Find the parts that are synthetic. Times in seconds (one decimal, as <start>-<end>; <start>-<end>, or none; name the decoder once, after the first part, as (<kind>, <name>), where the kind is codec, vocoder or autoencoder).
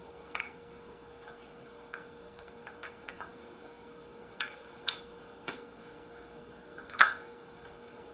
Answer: 0.0-8.1 (codec, SNAC)